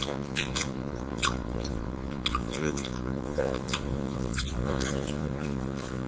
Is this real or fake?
fake